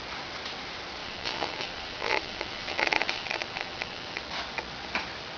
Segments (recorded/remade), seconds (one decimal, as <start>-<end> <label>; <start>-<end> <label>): 0.0-1.0 recorded; 1.0-4.2 remade; 4.2-5.4 recorded